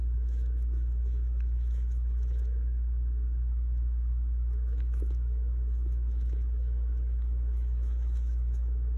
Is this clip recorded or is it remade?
remade